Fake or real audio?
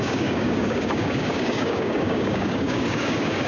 fake